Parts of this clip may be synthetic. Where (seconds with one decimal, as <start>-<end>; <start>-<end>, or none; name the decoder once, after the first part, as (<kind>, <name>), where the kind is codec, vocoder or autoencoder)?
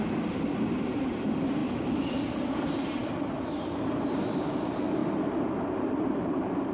0.0-5.0 (vocoder, BigVGAN v2); 5.5-6.7